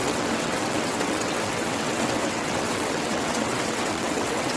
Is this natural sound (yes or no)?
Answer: no